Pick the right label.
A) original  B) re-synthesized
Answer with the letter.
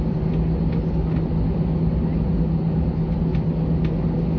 A